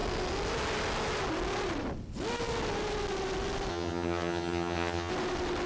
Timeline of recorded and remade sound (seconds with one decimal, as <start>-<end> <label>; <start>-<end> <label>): 0.0-3.7 recorded; 3.7-5.1 remade; 5.1-5.7 recorded